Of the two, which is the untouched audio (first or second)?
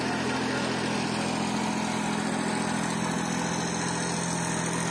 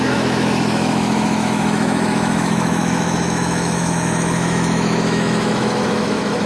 first